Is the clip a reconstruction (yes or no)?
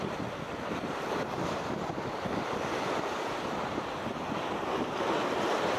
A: no